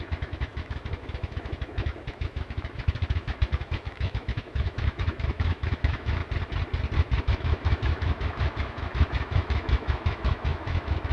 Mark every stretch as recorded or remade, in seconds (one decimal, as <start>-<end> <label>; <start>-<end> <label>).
0.0-6.2 remade; 6.2-7.2 recorded; 7.2-11.1 remade